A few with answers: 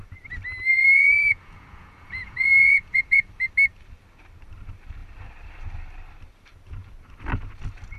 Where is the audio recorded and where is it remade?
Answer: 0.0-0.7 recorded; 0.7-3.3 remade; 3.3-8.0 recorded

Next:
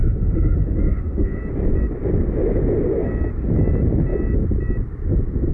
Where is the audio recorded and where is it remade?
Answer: 0.0-1.4 remade; 1.4-5.5 recorded

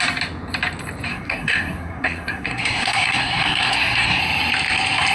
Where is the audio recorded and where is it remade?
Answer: 0.0-1.1 recorded; 1.1-4.2 remade; 4.2-5.1 recorded

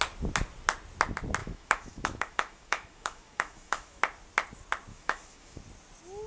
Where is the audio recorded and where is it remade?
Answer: 0.0-1.4 recorded; 1.4-4.0 remade; 4.0-4.9 recorded; 4.9-5.6 remade; 5.6-6.3 recorded